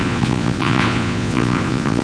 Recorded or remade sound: remade